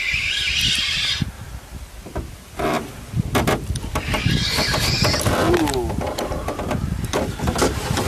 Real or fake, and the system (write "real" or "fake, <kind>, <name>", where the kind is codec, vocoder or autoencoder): real